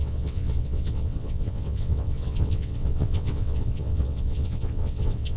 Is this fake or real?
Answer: fake